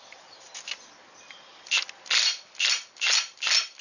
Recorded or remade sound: recorded